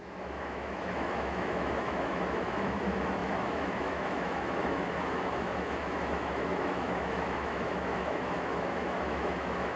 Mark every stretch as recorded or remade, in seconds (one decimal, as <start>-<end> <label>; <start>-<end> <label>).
0.0-9.8 remade